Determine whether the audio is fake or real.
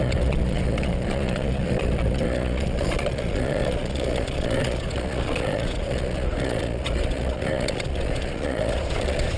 fake